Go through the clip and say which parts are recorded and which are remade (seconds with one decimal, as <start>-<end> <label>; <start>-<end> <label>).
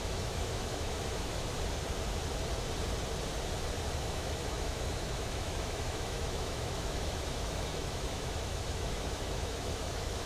0.0-1.5 remade; 1.5-4.0 recorded; 4.0-10.3 remade